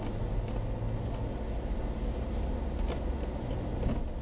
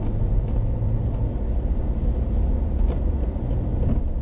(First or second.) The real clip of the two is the first